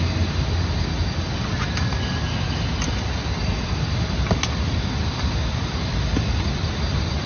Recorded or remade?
recorded